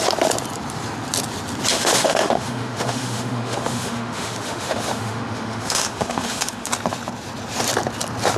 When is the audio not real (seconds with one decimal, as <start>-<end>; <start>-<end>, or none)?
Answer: 1.7-6.7

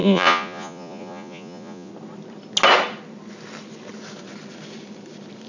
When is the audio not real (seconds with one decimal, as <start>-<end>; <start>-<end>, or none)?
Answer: 0.0-1.9

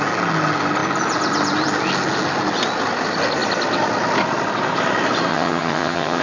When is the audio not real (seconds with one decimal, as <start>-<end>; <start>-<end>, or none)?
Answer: 5.3-6.2

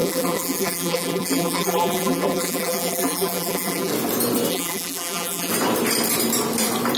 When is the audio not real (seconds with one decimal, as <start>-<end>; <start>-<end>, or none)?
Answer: 0.0-3.9; 4.5-5.5

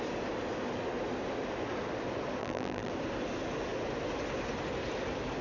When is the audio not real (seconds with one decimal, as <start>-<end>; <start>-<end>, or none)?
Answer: 2.4-2.9

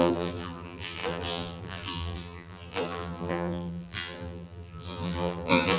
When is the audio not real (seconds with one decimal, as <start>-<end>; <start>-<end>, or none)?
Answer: 0.0-5.8

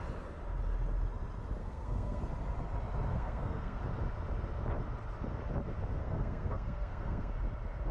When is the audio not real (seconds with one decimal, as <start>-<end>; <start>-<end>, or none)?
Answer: 1.6-2.2; 3.1-3.8; 6.0-7.3

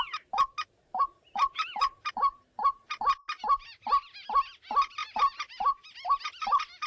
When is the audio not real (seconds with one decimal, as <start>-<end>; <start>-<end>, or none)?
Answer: none